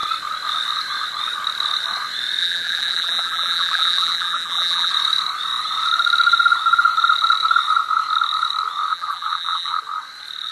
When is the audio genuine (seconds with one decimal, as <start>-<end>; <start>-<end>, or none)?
0.0-2.4; 4.9-8.9; 9.8-10.5